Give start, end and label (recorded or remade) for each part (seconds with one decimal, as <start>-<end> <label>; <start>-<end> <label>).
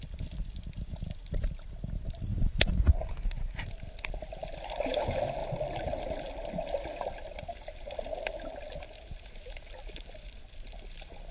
0.0-2.3 recorded; 2.3-2.9 remade; 2.9-11.3 recorded